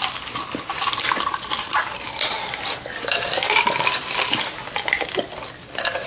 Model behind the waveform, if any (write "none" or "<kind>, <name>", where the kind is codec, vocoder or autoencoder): none